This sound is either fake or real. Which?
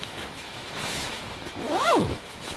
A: fake